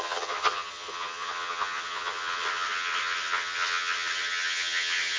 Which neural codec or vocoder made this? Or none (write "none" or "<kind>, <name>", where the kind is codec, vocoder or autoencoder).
vocoder, HiFi-GAN